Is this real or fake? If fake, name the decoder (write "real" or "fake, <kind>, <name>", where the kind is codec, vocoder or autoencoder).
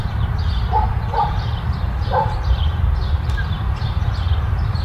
fake, vocoder, BigVGAN v2